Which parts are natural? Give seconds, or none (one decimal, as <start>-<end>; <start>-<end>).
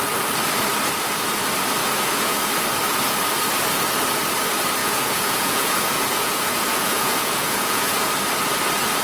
0.0-1.8; 2.5-4.8; 8.1-9.0